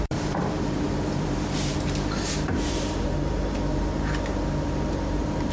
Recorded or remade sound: remade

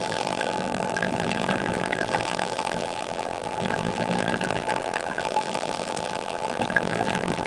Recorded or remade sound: remade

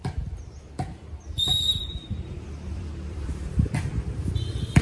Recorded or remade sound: remade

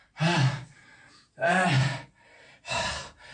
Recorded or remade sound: remade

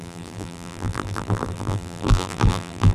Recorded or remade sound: remade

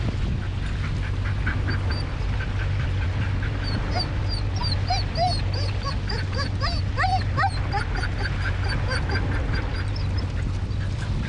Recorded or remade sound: recorded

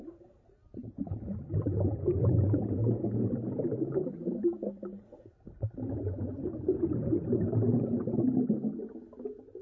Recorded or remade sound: remade